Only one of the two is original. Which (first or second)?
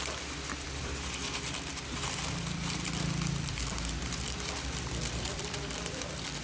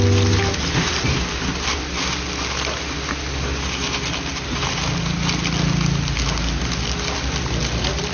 second